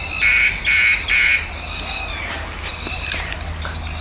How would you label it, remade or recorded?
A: recorded